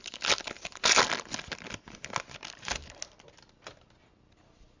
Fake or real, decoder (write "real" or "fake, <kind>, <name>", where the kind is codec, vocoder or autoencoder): real